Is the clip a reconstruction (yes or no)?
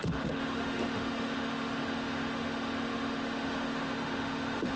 yes